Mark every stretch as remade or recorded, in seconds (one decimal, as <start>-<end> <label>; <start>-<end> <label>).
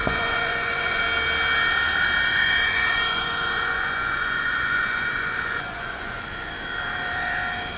0.0-1.0 remade; 1.0-2.3 recorded; 2.3-6.5 remade; 6.5-7.8 recorded